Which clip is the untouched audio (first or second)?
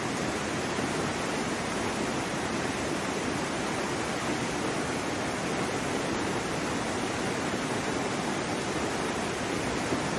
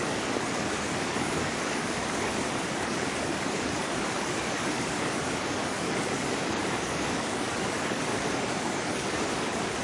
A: first